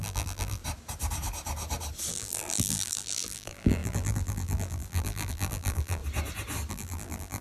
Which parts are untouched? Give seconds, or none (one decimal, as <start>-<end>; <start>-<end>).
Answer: 0.6-2.1; 6.0-6.7